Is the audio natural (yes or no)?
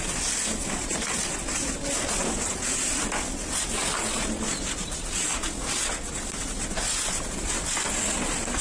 yes